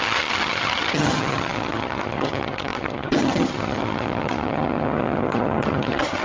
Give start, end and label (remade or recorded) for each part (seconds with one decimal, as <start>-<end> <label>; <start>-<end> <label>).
0.0-6.2 remade